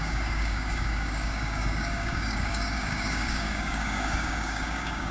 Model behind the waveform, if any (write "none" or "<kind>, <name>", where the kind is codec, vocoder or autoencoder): codec, DAC